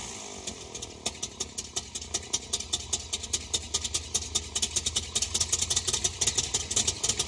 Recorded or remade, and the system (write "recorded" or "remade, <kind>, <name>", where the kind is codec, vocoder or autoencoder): recorded